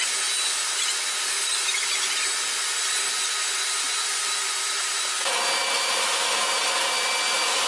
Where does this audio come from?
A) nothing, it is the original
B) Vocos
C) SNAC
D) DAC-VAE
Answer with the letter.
A